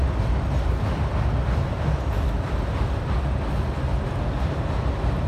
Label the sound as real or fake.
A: real